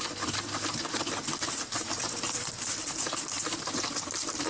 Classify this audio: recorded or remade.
remade